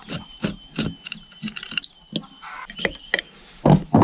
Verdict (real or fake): real